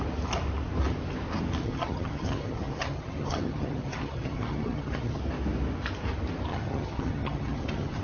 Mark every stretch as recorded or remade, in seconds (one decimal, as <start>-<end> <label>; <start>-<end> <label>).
0.0-1.6 recorded; 1.6-5.2 remade; 5.2-6.5 recorded; 6.5-8.0 remade